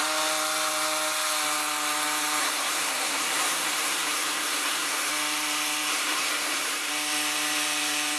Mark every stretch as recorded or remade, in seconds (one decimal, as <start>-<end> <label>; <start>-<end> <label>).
0.0-2.4 recorded; 2.4-5.1 remade; 5.1-5.9 recorded; 5.9-6.9 remade; 6.9-8.2 recorded